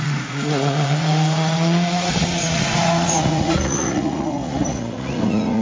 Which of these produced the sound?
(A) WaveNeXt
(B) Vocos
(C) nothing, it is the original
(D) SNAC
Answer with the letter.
B